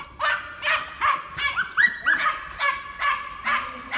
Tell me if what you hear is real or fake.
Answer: real